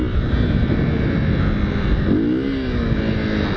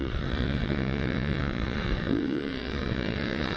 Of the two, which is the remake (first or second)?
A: second